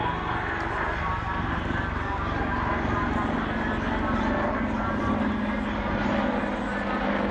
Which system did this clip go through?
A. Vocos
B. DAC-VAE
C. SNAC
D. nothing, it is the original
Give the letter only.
D